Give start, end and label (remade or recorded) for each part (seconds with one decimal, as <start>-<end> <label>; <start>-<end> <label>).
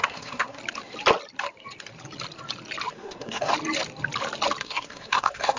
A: 0.0-0.6 remade; 0.6-2.9 recorded; 2.9-3.5 remade; 3.5-4.6 recorded; 4.6-5.6 remade